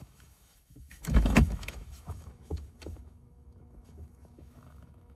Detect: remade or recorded remade